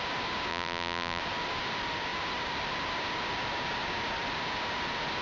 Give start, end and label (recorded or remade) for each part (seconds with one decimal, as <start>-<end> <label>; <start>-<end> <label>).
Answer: 0.0-0.5 recorded; 0.5-1.2 remade; 1.2-5.2 recorded